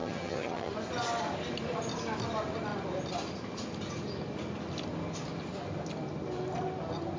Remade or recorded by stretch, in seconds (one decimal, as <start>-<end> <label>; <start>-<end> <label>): 0.0-0.7 remade; 0.7-7.2 recorded